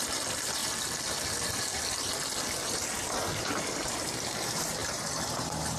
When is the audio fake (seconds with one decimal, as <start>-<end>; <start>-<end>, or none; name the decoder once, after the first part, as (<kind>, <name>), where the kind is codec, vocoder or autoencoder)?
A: 0.0-0.6 (vocoder, BigVGAN v2); 1.6-2.1; 3.3-5.8